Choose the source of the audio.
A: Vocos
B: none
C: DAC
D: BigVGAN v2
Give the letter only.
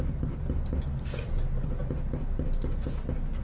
B